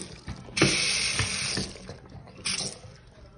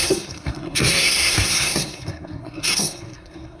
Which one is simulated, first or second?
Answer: second